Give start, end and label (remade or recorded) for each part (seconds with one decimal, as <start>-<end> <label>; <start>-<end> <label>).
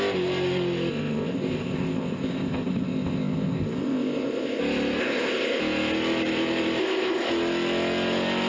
0.0-0.9 recorded; 0.9-4.6 remade; 4.6-5.0 recorded; 5.0-5.6 remade; 5.6-6.8 recorded; 6.8-7.3 remade; 7.3-8.5 recorded